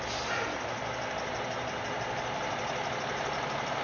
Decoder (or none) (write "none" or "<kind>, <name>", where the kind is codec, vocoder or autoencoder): none